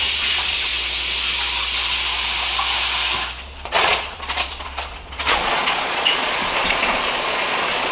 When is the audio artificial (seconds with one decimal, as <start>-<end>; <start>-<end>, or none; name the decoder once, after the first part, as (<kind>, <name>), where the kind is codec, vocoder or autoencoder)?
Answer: 0.0-0.7 (vocoder, Vocos); 3.4-7.9